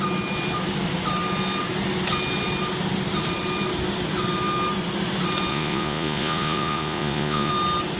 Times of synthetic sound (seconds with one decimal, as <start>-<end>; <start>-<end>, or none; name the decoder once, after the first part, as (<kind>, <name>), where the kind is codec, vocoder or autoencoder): 5.5-7.5 (vocoder, Vocos)